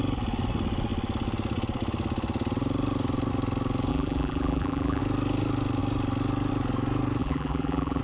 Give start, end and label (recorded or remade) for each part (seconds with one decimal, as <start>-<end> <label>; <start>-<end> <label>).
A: 0.0-3.9 recorded; 3.9-5.0 remade; 5.0-7.2 recorded; 7.2-8.0 remade